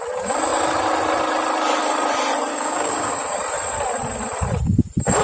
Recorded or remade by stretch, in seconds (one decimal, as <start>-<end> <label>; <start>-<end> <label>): 0.0-2.5 recorded; 2.5-3.1 remade; 3.1-5.2 recorded